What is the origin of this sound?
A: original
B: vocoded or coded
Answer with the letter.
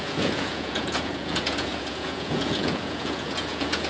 B